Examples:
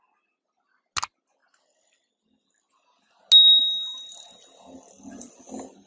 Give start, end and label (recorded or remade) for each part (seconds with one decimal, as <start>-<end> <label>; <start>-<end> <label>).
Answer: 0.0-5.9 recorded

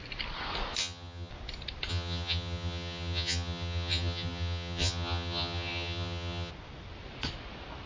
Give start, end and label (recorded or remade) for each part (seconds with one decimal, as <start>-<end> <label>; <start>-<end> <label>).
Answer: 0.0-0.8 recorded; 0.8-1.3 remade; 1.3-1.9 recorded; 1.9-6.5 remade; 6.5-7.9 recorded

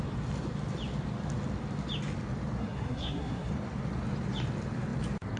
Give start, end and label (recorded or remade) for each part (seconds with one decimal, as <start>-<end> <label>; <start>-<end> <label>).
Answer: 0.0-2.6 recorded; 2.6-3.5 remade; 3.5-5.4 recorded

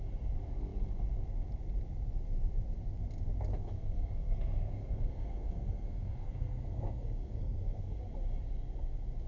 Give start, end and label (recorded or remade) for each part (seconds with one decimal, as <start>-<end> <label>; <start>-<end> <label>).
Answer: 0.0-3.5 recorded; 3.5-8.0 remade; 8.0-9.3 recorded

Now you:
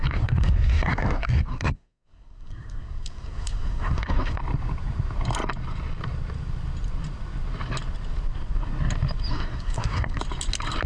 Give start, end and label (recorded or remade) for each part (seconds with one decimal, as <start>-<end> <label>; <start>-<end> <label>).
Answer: 0.0-4.4 remade; 4.4-9.3 recorded; 9.3-10.2 remade; 10.2-10.9 recorded

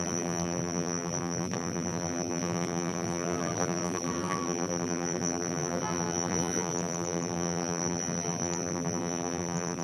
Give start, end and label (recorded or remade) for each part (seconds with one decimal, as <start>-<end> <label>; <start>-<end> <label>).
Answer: 0.0-9.8 remade

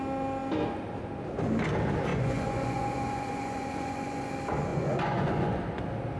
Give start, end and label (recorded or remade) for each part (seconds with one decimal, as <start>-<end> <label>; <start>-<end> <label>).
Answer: 0.0-2.1 recorded; 2.1-4.3 remade; 4.3-4.7 recorded; 4.7-5.6 remade; 5.6-6.2 recorded